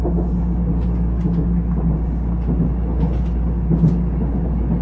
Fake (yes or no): no